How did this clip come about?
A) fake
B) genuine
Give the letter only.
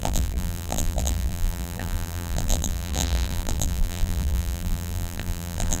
A